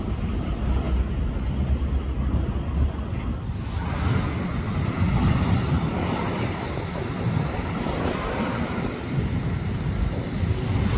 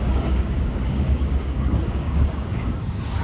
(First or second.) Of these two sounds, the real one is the first